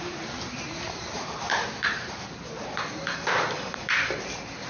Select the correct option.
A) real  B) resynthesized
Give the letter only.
B